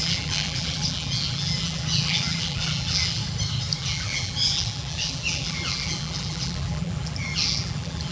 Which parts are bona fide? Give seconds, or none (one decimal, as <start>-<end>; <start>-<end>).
3.2-3.8